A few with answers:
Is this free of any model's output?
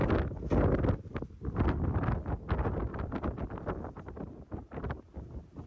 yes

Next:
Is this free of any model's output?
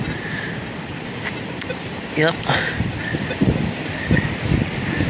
yes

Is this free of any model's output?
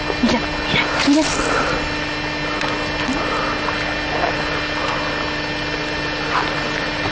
yes